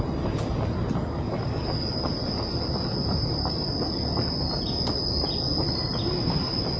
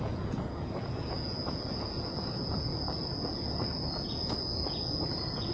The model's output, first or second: second